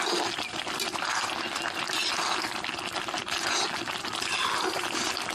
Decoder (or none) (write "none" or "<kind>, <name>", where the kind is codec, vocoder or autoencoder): none